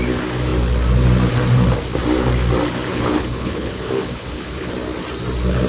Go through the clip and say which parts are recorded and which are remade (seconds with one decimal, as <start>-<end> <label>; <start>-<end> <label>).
0.0-2.9 recorded; 2.9-4.7 remade; 4.7-5.7 recorded

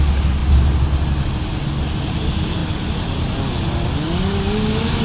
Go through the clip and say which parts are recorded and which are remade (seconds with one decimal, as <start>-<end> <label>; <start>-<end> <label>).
0.0-5.0 recorded